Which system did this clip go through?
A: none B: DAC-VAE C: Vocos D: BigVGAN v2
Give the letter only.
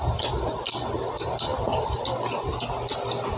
A